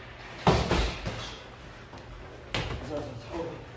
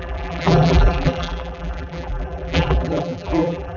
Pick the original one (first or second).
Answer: first